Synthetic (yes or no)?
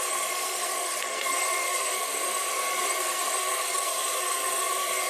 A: yes